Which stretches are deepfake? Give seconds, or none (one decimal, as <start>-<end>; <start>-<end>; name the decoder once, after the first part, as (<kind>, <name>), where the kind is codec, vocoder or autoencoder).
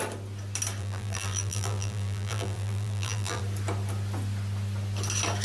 0.8-3.4 (vocoder, BigVGAN v2)